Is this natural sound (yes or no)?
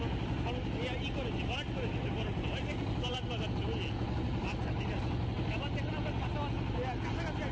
yes